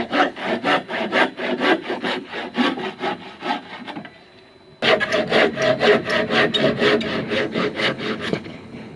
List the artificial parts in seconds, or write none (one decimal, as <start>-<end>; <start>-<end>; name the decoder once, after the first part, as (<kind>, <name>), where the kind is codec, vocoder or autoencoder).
0.0-0.4 (codec, HILCodec); 1.9-2.3; 7.3-9.0